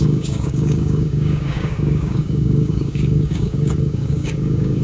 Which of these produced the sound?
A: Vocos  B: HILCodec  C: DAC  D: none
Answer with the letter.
C